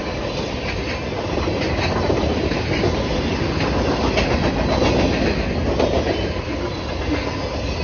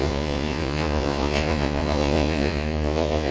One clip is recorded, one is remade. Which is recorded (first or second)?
first